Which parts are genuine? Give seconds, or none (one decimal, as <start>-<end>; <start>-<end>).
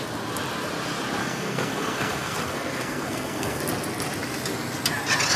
0.0-1.2; 3.6-5.4